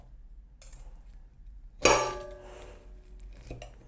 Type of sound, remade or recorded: recorded